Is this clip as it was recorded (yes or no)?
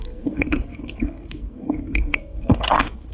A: no